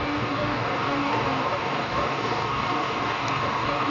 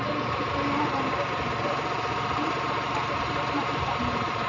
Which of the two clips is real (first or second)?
second